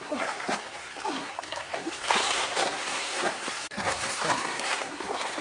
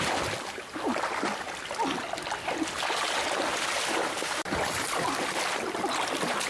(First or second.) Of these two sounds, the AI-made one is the first